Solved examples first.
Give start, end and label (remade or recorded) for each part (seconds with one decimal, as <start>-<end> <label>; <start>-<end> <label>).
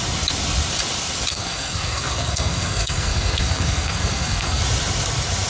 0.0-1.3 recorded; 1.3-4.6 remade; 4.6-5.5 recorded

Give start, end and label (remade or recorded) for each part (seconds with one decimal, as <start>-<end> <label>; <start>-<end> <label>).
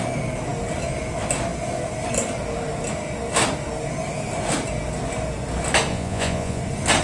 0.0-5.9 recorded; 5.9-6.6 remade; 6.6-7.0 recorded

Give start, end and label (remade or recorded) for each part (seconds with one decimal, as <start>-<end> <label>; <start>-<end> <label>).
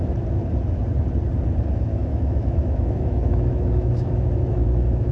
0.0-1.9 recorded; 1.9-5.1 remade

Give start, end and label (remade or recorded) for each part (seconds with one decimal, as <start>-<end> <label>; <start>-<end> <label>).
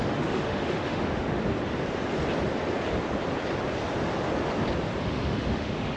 0.0-1.4 remade; 1.4-5.0 recorded; 5.0-6.0 remade